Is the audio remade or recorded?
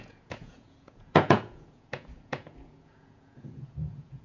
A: remade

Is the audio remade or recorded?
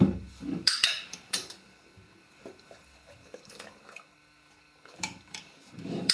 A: remade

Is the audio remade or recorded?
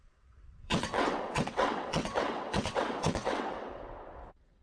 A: remade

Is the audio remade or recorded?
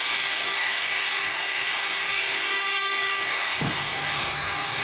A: remade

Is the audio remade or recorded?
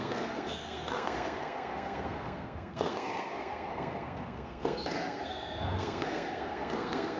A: remade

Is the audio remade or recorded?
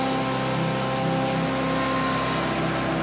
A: recorded